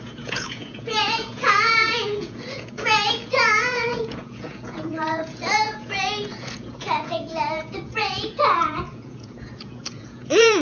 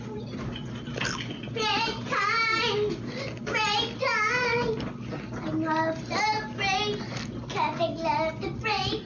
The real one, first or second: second